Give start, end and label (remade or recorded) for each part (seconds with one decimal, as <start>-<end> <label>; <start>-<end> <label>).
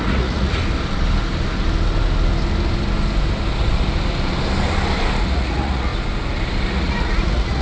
0.0-0.6 remade; 0.6-5.2 recorded; 5.2-5.9 remade; 5.9-6.7 recorded; 6.7-7.6 remade